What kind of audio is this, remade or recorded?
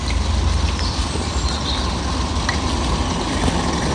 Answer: recorded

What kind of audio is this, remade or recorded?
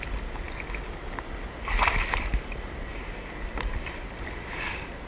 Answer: recorded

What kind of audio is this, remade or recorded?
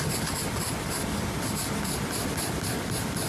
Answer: remade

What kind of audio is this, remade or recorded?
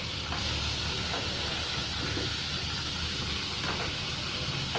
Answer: recorded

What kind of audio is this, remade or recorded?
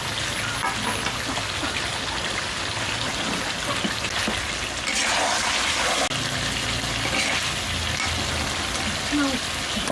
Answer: recorded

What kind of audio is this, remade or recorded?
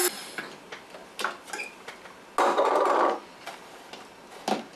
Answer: recorded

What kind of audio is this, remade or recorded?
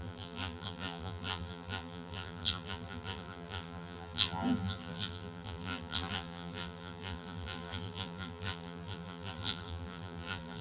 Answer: remade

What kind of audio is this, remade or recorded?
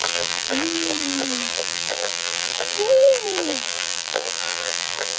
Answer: remade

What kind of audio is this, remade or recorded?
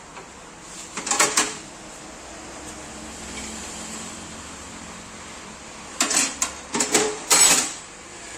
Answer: remade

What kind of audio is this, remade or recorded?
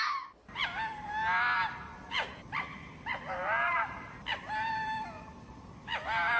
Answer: recorded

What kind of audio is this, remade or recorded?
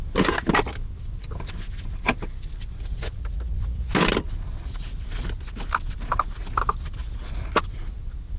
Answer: recorded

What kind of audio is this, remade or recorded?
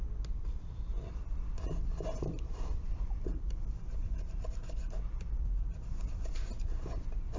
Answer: remade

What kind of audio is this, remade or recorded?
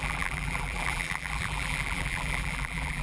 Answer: remade